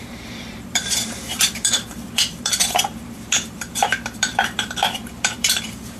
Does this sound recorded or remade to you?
remade